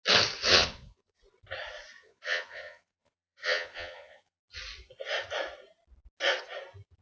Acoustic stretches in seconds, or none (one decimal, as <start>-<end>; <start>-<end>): 0.0-0.5; 1.2-2.0; 4.4-7.0